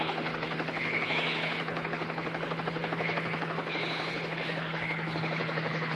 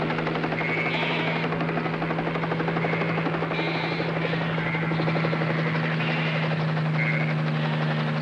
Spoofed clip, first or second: first